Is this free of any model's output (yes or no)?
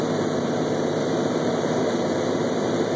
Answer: no